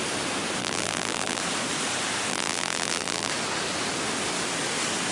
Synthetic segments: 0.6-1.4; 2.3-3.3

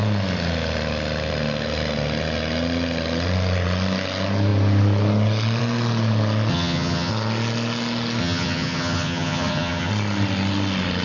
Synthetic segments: 6.5-7.1; 8.2-9.9

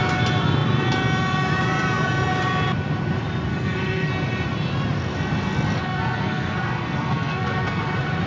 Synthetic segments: 3.5-4.1; 5.8-7.8

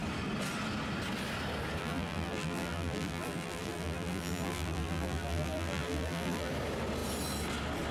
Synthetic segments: 1.8-6.5

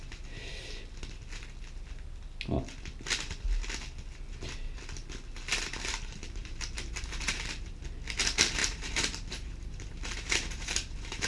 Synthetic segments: 5.5-7.8; 8.6-11.3

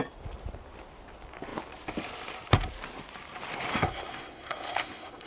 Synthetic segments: 3.7-5.3